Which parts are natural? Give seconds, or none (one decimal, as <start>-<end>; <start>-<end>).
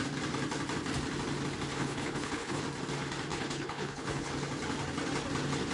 0.0-1.7; 2.6-3.3; 4.3-5.7